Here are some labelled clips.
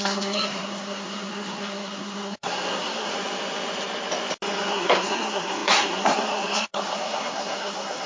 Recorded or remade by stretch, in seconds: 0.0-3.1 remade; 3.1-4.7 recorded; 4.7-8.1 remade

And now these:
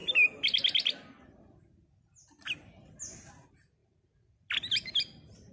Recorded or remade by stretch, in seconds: 0.0-5.5 recorded

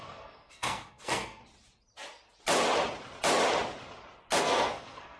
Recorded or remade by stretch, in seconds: 0.0-1.4 remade; 1.4-4.4 recorded; 4.4-5.2 remade

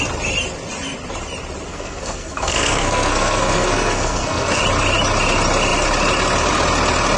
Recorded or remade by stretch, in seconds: 0.0-1.7 recorded; 1.7-4.6 remade; 4.6-7.2 recorded

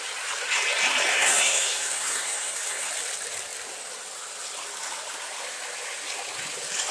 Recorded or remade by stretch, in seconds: 0.0-1.1 recorded; 1.1-2.9 remade; 2.9-6.9 recorded

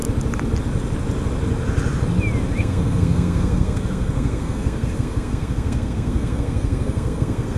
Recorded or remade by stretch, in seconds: 0.0-2.6 recorded; 2.6-7.6 remade

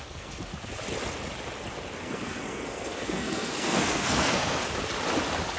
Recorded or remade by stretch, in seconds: 0.0-0.5 remade; 0.5-2.0 recorded; 2.0-4.6 remade; 4.6-5.6 recorded